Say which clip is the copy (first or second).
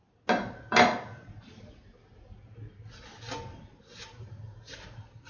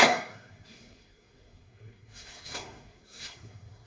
second